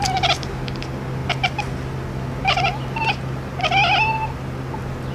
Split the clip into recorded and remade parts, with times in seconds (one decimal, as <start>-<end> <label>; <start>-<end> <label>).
0.0-5.1 recorded